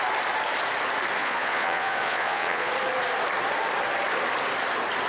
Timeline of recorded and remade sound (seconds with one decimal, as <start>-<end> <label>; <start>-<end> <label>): 0.0-1.2 recorded; 1.2-2.7 remade; 2.7-5.1 recorded